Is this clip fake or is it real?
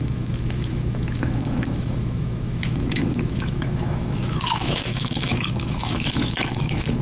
fake